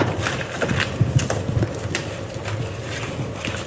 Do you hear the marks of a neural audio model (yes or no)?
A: no